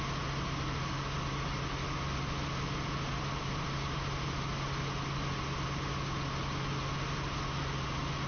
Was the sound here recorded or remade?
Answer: recorded